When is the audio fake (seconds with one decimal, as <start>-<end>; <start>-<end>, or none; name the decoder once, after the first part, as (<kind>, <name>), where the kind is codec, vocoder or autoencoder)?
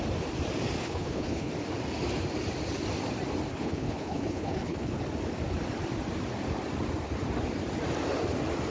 0.8-1.5 (codec, HILCodec); 3.5-5.0